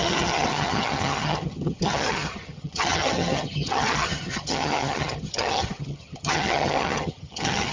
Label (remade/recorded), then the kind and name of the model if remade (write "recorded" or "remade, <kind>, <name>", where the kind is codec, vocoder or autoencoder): remade, vocoder, HiFi-GAN